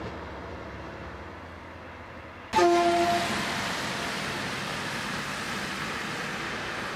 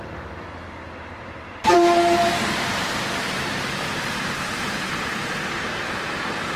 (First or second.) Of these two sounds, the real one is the first